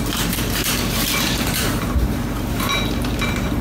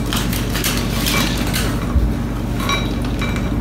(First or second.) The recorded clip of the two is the second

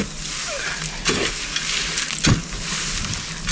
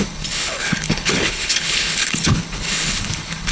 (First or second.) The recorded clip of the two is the first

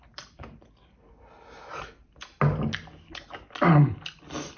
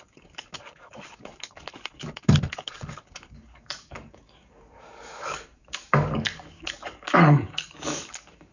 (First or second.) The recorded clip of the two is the first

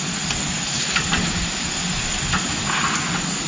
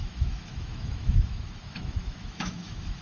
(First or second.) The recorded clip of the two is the first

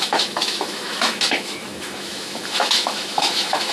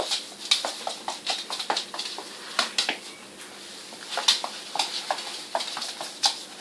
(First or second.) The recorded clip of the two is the second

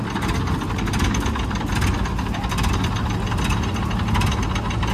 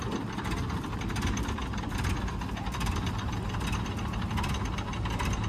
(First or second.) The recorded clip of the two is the first